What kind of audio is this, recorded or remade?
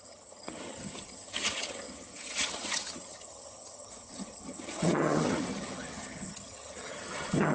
remade